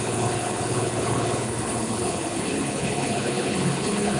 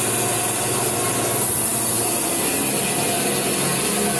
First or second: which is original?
second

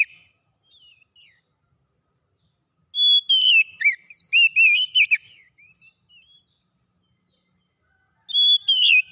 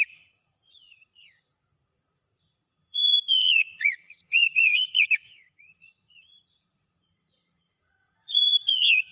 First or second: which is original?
first